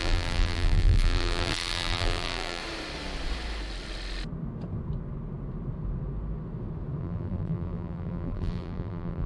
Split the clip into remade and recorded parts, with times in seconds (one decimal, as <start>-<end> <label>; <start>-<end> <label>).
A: 0.0-2.6 remade; 2.6-7.0 recorded; 7.0-9.3 remade